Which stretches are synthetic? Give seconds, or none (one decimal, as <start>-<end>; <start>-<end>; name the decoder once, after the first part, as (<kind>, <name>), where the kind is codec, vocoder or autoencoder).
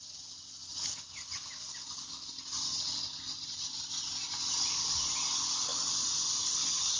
5.7-7.0 (vocoder, BigVGAN v2)